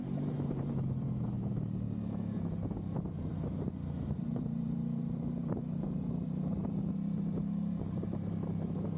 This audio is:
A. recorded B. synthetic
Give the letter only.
B